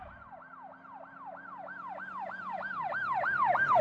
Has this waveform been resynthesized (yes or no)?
yes